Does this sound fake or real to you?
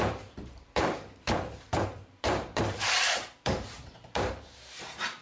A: fake